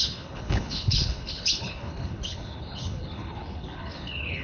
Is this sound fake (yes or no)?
yes